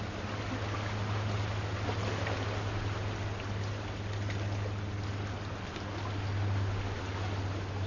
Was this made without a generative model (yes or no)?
yes